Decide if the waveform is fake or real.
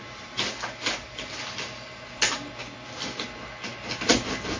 real